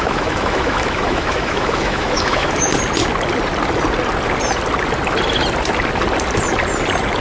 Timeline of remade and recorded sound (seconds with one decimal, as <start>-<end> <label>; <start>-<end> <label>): 0.0-2.7 remade; 2.7-7.2 recorded